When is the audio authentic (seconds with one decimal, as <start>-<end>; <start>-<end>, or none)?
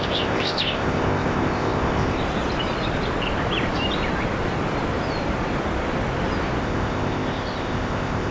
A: 2.2-6.6